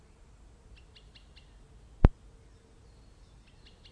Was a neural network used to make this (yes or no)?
no